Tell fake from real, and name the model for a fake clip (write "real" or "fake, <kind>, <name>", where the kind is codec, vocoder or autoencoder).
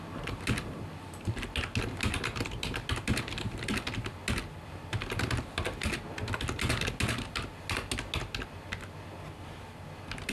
real